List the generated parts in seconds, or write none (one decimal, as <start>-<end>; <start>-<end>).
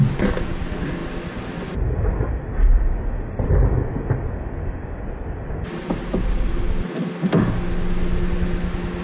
none